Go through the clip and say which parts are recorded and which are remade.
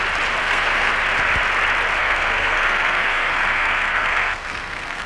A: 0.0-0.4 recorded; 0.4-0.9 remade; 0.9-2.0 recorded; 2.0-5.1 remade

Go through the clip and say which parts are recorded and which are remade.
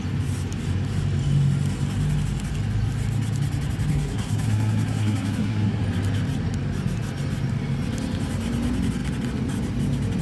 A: 0.0-3.9 recorded; 3.9-5.8 remade; 5.8-10.2 recorded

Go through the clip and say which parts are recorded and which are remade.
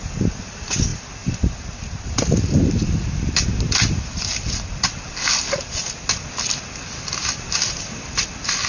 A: 0.0-8.7 recorded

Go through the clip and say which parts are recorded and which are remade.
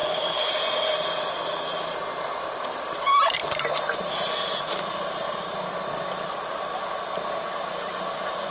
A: 0.0-0.5 remade; 0.5-8.5 recorded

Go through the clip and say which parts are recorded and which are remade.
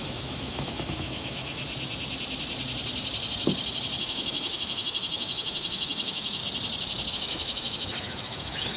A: 0.0-1.6 remade; 1.6-4.0 recorded; 4.0-6.4 remade; 6.4-7.1 recorded; 7.1-8.8 remade